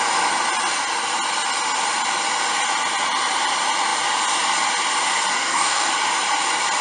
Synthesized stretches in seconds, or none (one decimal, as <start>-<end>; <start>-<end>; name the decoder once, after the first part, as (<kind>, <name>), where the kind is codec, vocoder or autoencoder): 5.3-5.9 (codec, DAC)

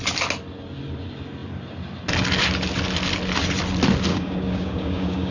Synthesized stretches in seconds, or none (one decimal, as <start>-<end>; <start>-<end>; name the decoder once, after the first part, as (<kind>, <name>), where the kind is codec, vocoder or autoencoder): 4.1-5.3 (codec, DAC)